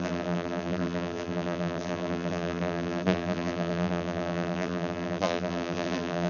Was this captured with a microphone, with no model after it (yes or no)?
no